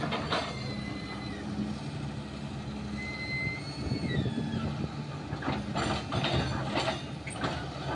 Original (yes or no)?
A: yes